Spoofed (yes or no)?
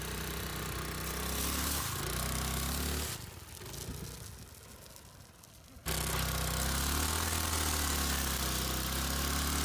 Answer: no